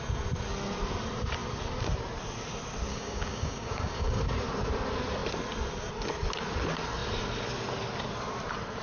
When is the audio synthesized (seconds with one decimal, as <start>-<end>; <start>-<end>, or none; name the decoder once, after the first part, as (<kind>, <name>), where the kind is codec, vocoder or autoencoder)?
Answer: 2.9-4.2 (codec, DAC)